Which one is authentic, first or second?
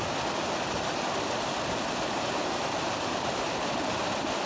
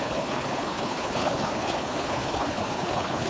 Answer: first